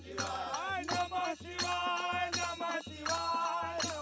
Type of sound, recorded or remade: recorded